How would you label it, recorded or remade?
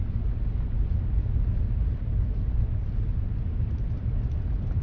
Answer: recorded